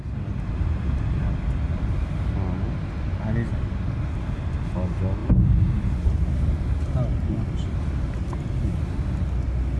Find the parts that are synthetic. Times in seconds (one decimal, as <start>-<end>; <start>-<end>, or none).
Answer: none